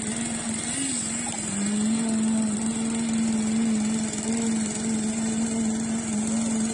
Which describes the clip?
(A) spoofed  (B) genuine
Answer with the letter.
B